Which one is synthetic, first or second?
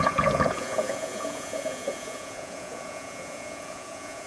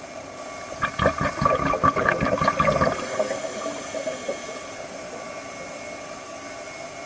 first